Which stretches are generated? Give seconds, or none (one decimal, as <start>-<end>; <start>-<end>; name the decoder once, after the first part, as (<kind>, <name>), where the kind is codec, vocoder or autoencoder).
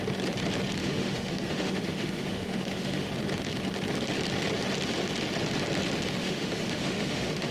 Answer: 0.8-3.1 (autoencoder, DAC-VAE); 6.2-7.5